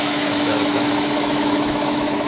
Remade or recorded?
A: remade